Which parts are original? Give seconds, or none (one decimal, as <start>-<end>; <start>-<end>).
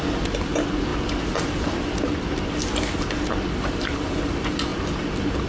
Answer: 0.0-5.5